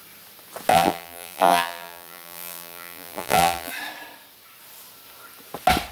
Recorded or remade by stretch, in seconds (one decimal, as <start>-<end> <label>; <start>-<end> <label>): 0.0-0.7 recorded; 0.7-3.7 remade; 3.7-5.9 recorded

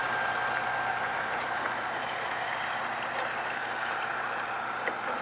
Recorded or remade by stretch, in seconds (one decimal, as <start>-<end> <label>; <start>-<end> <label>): 0.0-0.9 recorded; 0.9-2.3 remade; 2.3-3.6 recorded; 3.6-4.5 remade; 4.5-5.2 recorded

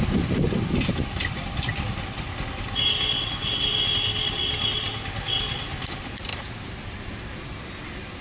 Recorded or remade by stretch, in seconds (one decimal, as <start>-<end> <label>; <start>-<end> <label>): 0.0-6.3 recorded; 6.3-7.7 remade; 7.7-8.2 recorded

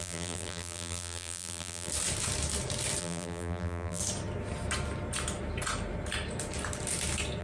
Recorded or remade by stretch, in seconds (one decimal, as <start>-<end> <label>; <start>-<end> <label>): 0.0-1.9 remade; 1.9-3.0 recorded; 3.0-4.0 remade; 4.0-7.4 recorded